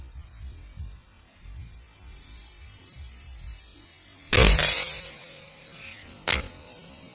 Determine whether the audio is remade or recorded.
recorded